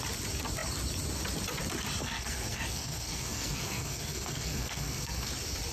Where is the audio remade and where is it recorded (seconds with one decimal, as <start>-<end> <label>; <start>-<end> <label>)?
0.0-2.0 recorded; 2.0-5.3 remade; 5.3-5.7 recorded